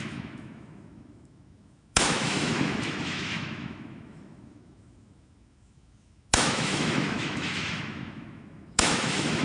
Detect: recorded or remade remade